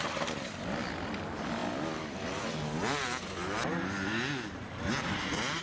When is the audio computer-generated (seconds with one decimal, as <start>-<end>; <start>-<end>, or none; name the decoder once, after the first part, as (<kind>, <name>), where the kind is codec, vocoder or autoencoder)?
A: none